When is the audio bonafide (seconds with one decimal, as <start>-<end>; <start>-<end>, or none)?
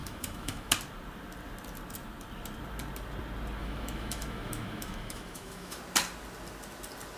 0.7-3.6; 5.8-7.2